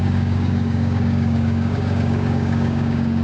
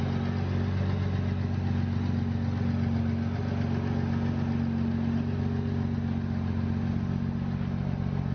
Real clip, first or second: second